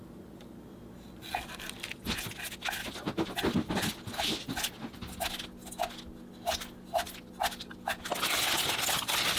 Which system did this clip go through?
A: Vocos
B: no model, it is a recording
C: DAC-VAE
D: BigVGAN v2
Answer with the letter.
B